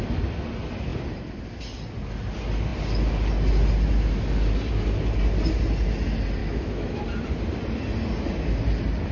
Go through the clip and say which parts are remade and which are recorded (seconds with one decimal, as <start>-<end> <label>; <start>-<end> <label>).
0.0-6.4 recorded; 6.4-7.0 remade; 7.0-9.1 recorded